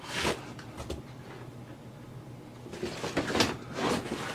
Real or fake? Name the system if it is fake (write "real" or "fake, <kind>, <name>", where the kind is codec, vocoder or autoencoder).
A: real